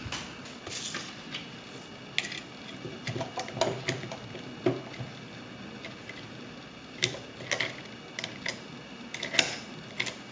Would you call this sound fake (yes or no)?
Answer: no